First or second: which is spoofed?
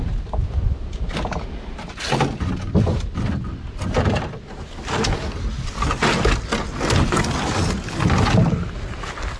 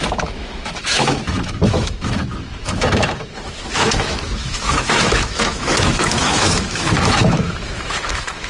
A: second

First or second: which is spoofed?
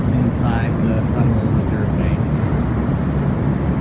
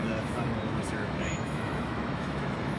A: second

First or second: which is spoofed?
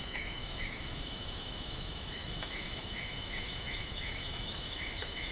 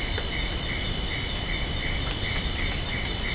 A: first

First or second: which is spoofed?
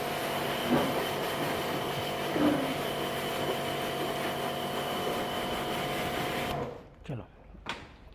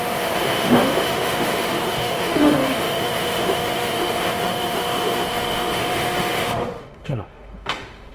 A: second